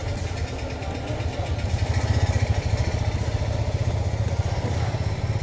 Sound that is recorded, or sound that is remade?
recorded